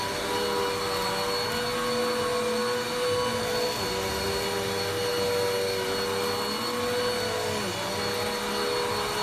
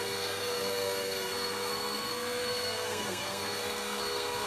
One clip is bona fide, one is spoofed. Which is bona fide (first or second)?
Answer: first